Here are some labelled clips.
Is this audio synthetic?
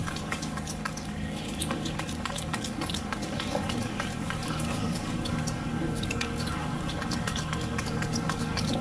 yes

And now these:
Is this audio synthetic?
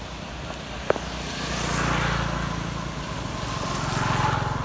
no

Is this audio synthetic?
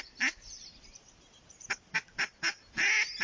no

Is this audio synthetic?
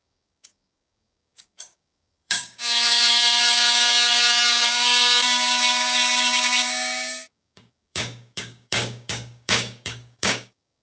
yes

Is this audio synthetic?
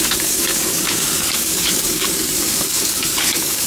yes